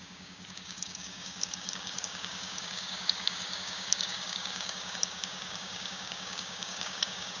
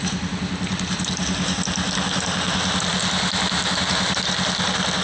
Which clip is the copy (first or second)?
first